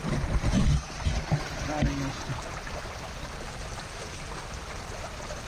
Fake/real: real